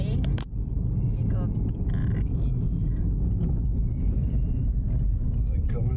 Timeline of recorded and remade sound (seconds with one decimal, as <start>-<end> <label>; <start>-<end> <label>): 0.0-6.0 recorded